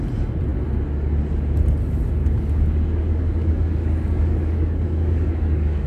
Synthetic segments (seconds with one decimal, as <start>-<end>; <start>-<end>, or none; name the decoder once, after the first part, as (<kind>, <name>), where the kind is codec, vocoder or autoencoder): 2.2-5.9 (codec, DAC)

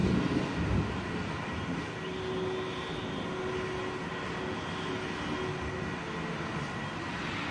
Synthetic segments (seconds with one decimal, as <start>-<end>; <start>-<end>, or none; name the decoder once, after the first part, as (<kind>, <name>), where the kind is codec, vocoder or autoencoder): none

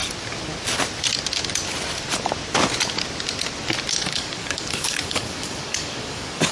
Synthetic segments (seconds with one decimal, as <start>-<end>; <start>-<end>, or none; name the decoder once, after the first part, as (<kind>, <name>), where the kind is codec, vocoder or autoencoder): 3.9-6.5 (codec, DAC)

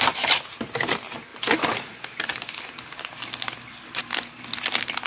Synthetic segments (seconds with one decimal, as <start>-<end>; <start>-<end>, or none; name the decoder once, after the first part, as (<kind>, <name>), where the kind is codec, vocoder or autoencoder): none